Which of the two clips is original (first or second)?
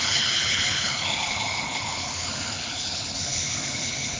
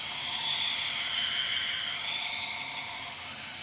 second